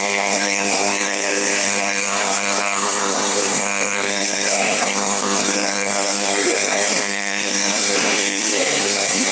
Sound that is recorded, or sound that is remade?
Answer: remade